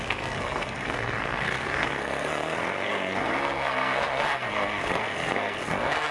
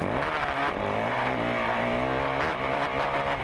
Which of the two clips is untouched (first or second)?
second